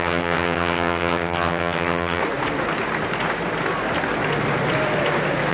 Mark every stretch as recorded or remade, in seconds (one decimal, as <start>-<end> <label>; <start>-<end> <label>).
0.0-2.2 remade; 2.2-5.5 recorded